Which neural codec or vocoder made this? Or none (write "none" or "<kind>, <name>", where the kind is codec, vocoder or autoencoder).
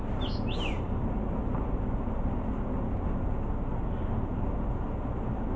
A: none